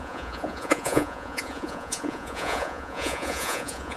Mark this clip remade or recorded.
remade